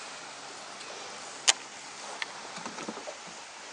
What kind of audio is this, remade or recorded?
recorded